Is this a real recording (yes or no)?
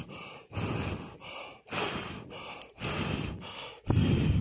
yes